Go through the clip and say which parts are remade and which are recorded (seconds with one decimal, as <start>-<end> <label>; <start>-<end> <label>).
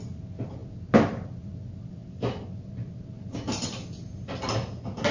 0.0-5.1 recorded